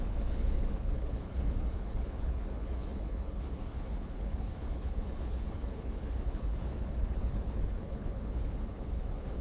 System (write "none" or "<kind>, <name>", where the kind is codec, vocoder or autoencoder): codec, HILCodec